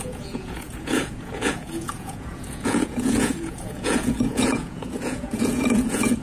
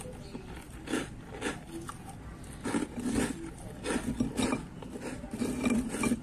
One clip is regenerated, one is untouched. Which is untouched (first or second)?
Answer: second